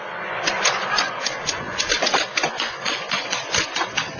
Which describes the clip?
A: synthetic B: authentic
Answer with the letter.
A